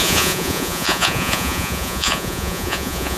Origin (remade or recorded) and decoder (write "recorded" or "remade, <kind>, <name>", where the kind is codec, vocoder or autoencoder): remade, vocoder, Vocos